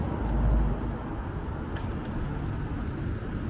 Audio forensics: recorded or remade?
recorded